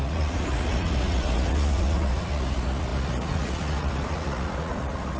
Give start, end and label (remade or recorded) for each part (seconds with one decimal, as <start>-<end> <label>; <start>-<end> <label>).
0.0-5.2 remade